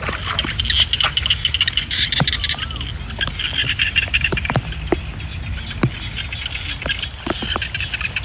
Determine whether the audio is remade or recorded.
recorded